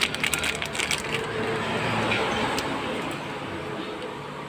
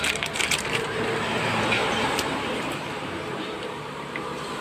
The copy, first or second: second